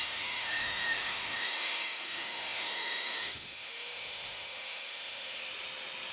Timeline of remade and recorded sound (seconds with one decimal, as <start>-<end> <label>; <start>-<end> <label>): 0.0-5.4 remade; 5.4-6.1 recorded